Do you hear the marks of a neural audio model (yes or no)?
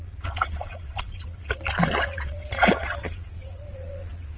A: yes